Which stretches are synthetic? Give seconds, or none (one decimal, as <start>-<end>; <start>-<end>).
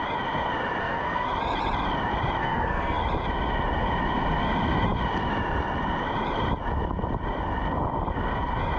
0.8-1.3; 2.4-3.0